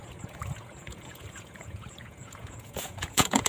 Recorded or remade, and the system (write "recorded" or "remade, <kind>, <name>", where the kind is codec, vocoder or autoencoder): remade, vocoder, Vocos